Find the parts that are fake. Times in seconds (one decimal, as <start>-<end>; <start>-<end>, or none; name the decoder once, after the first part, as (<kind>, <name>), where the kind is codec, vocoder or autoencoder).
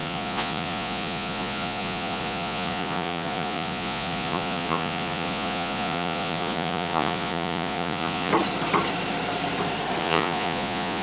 0.0-8.3 (vocoder, Vocos); 10.0-11.0